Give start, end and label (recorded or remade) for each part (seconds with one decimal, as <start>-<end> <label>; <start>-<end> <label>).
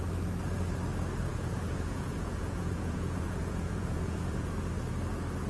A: 0.0-1.3 recorded; 1.3-4.5 remade; 4.5-5.5 recorded